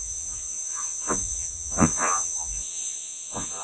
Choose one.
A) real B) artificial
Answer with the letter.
B